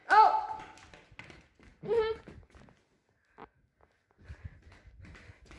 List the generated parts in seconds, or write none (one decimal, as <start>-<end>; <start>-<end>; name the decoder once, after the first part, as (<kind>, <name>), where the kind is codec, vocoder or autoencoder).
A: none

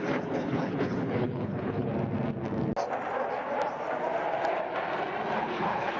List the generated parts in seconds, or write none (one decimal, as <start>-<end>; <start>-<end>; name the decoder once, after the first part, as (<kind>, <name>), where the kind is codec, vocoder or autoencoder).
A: 0.0-1.9 (codec, HILCodec); 5.4-6.0

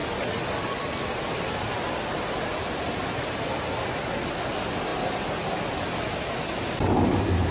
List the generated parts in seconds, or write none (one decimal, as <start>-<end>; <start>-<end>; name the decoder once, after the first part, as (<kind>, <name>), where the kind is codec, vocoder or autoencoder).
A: none

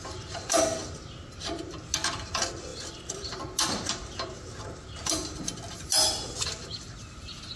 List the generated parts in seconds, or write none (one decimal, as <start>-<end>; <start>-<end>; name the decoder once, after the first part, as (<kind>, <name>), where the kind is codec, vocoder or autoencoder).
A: none

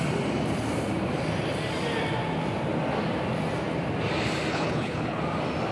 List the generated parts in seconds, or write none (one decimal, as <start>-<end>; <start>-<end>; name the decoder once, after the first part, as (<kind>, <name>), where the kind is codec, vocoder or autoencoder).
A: 4.5-5.2 (codec, HILCodec)

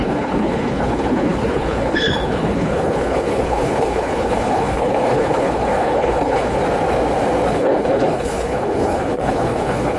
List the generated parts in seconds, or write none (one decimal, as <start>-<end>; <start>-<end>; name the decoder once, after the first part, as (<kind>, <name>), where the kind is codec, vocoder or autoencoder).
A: 0.0-6.6 (codec, HILCodec); 7.5-10.0

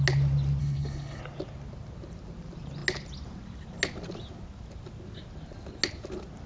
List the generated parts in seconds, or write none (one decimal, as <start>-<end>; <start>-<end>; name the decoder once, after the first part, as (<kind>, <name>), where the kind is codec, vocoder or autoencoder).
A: 0.6-1.2 (codec, HILCodec)